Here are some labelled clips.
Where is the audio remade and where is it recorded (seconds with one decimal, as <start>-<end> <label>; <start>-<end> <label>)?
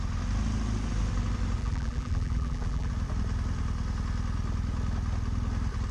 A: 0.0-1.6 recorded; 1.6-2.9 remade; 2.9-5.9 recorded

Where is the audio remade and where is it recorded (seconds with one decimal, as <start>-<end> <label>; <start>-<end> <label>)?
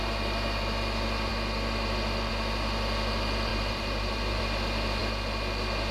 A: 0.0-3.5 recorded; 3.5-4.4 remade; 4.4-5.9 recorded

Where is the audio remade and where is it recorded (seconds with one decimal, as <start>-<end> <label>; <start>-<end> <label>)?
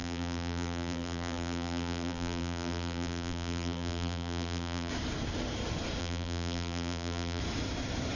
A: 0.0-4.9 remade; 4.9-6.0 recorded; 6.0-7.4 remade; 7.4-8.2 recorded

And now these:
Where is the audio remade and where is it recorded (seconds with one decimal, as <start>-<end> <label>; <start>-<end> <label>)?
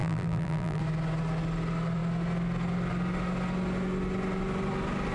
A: 0.0-0.8 remade; 0.8-5.1 recorded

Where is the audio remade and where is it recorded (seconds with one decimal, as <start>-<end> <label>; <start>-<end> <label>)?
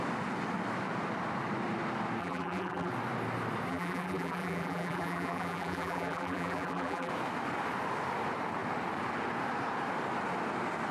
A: 0.0-2.2 recorded; 2.2-2.9 remade; 2.9-3.7 recorded; 3.7-7.1 remade; 7.1-10.9 recorded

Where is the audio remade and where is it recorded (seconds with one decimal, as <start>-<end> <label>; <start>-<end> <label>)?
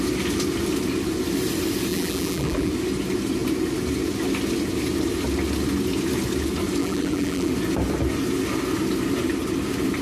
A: 0.0-1.9 recorded; 1.9-2.7 remade; 2.7-6.8 recorded; 6.8-7.5 remade; 7.5-10.0 recorded